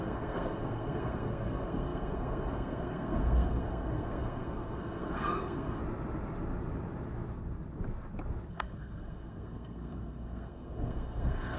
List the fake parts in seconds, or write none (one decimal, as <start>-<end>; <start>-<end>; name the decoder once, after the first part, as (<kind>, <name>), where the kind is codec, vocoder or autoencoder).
0.0-5.8 (codec, SNAC); 8.5-11.6